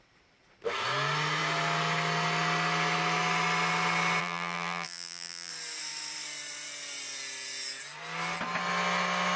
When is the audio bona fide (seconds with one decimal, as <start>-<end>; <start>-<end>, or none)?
0.0-4.2; 5.5-9.4